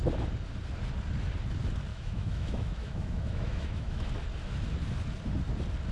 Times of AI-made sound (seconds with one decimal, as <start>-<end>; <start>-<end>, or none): 1.9-4.1